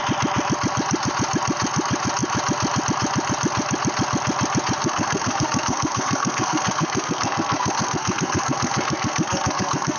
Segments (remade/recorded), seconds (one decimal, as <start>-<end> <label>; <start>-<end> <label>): 0.0-4.8 recorded; 4.8-10.0 remade